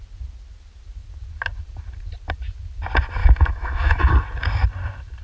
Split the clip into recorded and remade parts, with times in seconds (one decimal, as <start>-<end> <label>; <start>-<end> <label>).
0.0-3.2 recorded; 3.2-4.1 remade; 4.1-5.2 recorded